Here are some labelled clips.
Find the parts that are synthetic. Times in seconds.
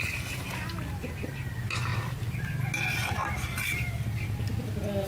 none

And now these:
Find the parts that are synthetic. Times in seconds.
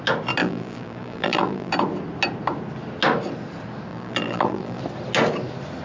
0.4-1.7; 3.9-4.8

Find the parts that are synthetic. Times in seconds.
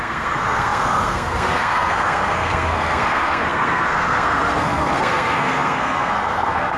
0.0-6.8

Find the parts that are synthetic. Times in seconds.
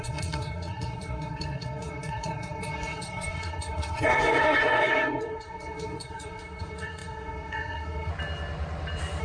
0.0-8.1